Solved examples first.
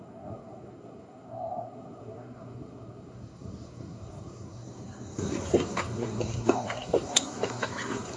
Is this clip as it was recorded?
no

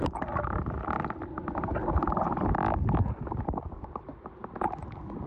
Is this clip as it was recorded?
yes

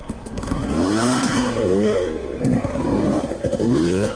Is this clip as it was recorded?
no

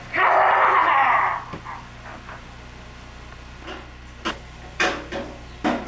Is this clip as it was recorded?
yes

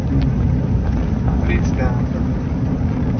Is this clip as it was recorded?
yes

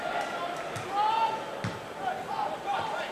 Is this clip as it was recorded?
yes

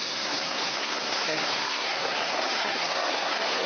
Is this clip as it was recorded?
no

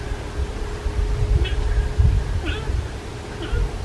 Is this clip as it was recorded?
yes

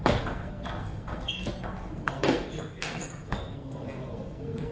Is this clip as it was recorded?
no